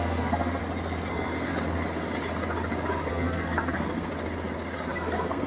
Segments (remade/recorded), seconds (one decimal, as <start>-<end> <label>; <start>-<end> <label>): 0.0-0.6 remade; 0.6-1.1 recorded; 1.1-1.5 remade; 1.5-3.1 recorded; 3.1-4.1 remade; 4.1-4.9 recorded; 4.9-5.5 remade